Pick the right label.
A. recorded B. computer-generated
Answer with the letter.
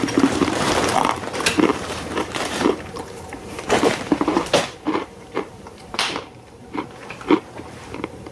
B